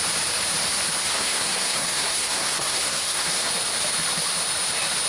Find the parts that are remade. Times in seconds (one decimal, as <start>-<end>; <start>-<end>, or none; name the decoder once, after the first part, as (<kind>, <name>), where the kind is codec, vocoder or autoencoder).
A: 1.0-3.5 (codec, SNAC)